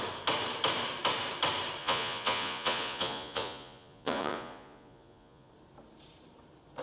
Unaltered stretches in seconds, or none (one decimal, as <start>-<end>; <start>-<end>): 0.0-1.8; 5.5-6.8